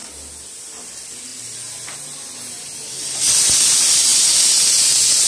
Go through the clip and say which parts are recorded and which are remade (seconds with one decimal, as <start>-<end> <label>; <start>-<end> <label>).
0.0-5.3 recorded